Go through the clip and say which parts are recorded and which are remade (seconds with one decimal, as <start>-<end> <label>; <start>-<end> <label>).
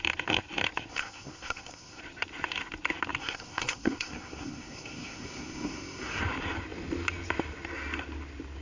0.0-0.9 recorded; 0.9-2.0 remade; 2.0-3.2 recorded; 3.2-6.2 remade; 6.2-8.6 recorded